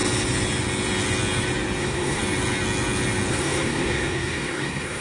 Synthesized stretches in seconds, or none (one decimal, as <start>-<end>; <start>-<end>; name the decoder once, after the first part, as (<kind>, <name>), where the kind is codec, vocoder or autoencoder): 1.8-2.2 (codec, SNAC); 3.3-5.0